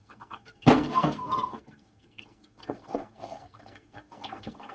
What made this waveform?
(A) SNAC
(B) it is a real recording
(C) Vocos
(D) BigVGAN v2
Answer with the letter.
A